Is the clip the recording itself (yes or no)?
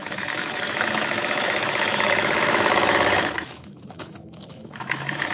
no